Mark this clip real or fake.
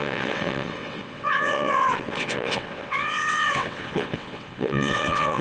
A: fake